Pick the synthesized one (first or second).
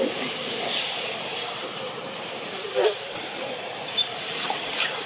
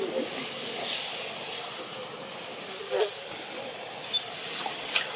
first